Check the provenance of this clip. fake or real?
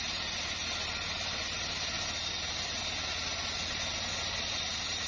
real